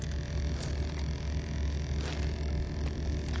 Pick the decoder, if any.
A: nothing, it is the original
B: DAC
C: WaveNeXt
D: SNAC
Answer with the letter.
A